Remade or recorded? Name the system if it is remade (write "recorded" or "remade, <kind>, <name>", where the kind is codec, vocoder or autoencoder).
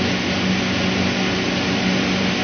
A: recorded